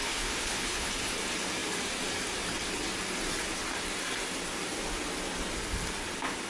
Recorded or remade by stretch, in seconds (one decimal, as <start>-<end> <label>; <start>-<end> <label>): 0.0-0.9 remade; 0.9-6.5 recorded